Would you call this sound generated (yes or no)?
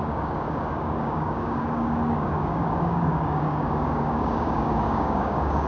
yes